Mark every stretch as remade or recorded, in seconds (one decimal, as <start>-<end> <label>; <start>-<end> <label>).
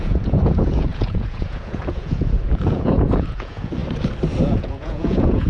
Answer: 0.0-3.8 remade; 3.8-4.4 recorded; 4.4-5.5 remade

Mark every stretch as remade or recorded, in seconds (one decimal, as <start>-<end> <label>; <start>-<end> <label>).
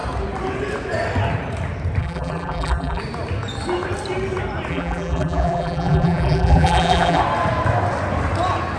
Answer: 0.0-2.0 recorded; 2.0-3.0 remade; 3.0-4.7 recorded; 4.7-7.2 remade; 7.2-8.8 recorded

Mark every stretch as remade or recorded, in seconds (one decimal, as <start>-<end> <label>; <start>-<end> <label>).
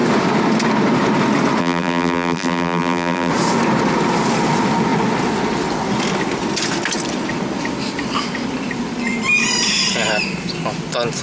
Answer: 0.0-1.6 recorded; 1.6-3.3 remade; 3.3-11.2 recorded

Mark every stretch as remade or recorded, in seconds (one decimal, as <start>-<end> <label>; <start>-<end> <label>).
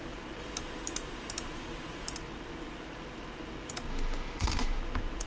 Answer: 0.0-3.9 recorded; 3.9-4.8 remade; 4.8-5.3 recorded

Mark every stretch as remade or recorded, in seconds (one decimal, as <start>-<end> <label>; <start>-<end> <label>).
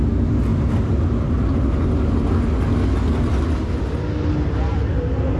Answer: 0.0-5.4 recorded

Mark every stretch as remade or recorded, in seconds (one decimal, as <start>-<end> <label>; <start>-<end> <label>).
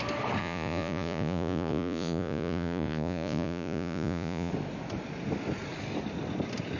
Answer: 0.0-0.4 recorded; 0.4-4.5 remade; 4.5-6.8 recorded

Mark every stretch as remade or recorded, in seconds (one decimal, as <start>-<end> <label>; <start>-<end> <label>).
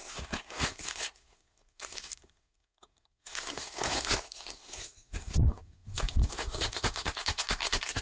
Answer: 0.0-8.0 remade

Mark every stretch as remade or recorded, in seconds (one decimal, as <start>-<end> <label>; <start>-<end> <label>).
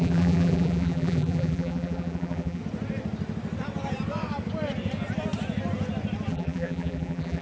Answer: 0.0-2.6 remade; 2.6-6.3 recorded; 6.3-7.4 remade